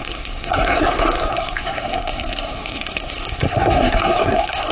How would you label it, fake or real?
fake